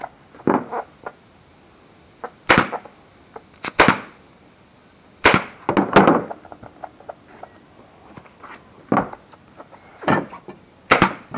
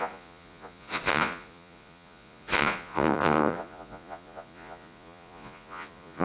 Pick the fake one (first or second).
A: second